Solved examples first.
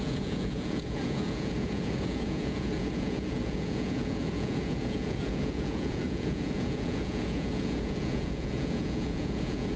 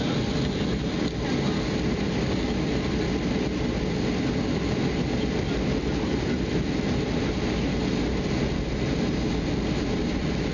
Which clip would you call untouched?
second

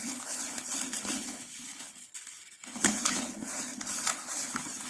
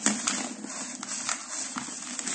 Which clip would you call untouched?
second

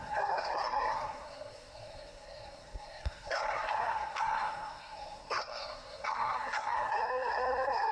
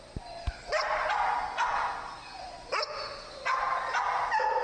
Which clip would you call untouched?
second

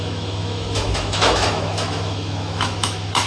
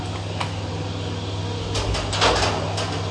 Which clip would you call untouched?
second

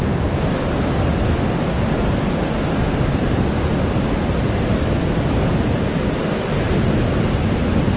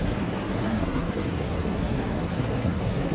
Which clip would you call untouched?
first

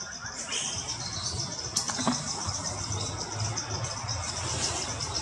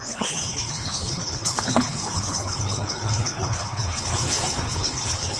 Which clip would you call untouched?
first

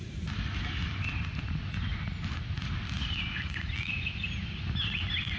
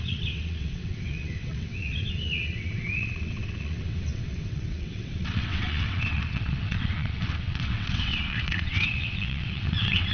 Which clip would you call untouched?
first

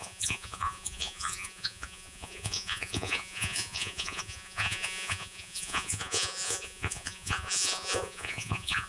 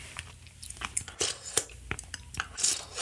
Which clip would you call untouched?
second